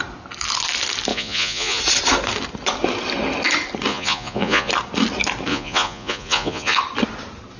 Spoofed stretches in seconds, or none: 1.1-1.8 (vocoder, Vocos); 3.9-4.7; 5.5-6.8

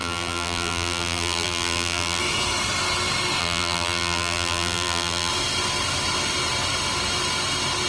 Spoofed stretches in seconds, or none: 0.0-2.2 (vocoder, BigVGAN v2); 3.4-5.3